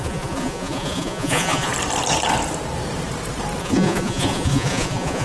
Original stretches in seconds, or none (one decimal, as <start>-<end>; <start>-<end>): 1.7-3.6